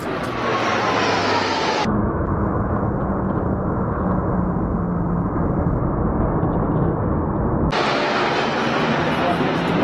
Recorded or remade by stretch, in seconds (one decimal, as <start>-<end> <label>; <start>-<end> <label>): 0.0-1.2 recorded; 1.2-2.9 remade; 2.9-9.8 recorded

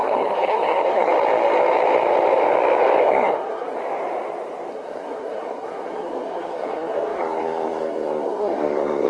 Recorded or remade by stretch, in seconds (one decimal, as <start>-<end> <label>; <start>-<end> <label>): 0.0-1.1 remade; 1.1-3.0 recorded; 3.0-3.8 remade; 3.8-4.7 recorded; 4.7-9.1 remade